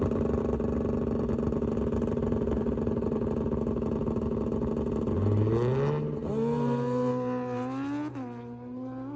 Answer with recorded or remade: recorded